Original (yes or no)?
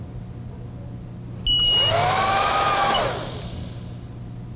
yes